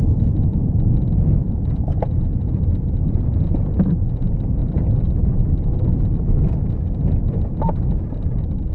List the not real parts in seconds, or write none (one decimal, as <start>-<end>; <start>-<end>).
0.0-4.6